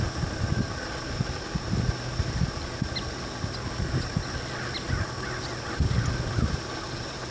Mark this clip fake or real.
real